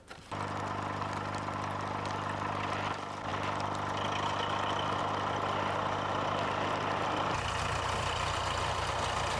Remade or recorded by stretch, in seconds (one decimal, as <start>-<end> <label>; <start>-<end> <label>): 0.0-9.4 recorded